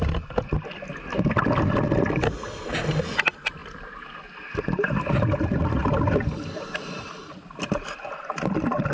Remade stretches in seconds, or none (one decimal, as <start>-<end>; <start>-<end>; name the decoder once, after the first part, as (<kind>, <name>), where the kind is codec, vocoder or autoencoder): 3.6-4.6 (vocoder, BigVGAN v2); 5.8-6.7